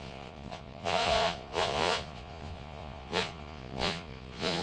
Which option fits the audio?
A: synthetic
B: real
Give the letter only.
A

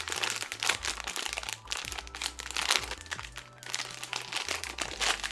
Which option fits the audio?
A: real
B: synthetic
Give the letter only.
A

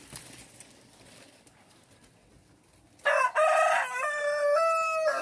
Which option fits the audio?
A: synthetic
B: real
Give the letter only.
B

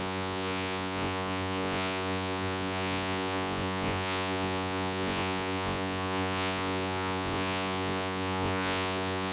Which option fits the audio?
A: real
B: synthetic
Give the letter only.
B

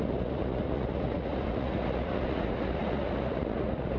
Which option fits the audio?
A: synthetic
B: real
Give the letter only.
A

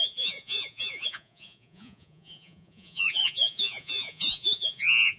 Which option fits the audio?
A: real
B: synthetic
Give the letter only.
B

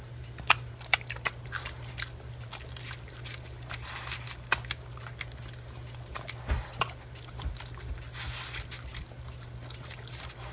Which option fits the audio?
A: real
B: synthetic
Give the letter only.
A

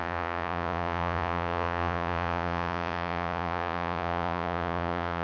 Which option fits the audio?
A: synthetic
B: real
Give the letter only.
A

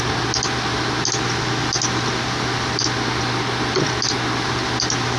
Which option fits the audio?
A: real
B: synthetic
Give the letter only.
A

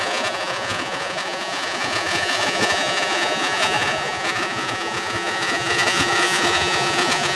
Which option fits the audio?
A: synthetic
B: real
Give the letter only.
A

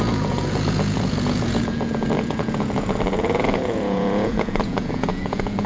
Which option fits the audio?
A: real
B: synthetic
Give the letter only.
B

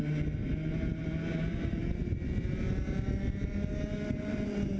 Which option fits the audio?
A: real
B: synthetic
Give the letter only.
A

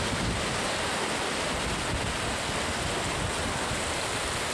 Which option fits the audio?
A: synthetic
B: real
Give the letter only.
B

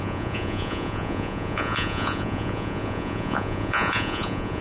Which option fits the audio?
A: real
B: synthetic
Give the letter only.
B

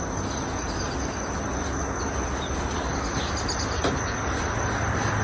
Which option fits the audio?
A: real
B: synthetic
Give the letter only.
A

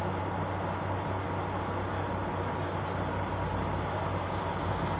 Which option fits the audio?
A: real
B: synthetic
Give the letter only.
A